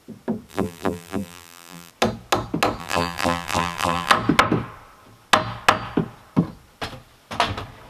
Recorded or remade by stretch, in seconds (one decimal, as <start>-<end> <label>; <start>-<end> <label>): 0.0-0.5 recorded; 0.5-1.9 remade; 1.9-2.8 recorded; 2.8-4.1 remade; 4.1-7.9 recorded